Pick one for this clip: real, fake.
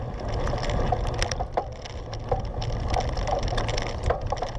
real